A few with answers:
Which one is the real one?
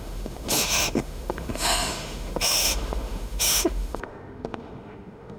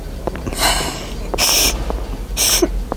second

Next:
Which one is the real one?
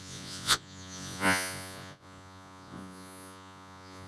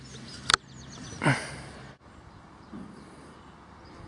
second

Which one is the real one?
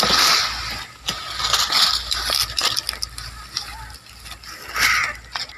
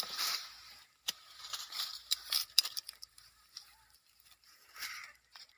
first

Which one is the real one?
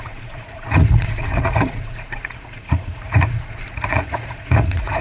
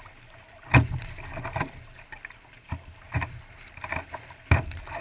second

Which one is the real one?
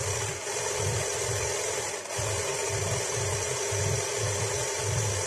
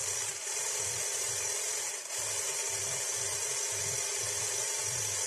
first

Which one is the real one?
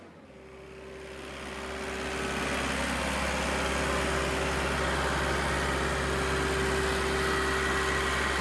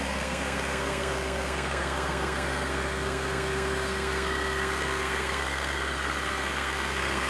first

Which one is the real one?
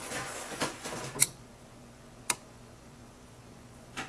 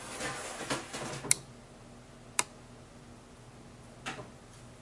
second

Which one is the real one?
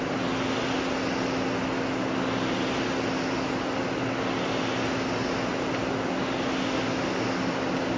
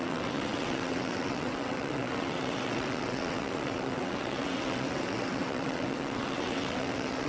first